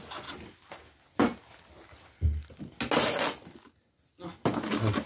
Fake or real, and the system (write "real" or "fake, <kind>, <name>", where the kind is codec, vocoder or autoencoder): real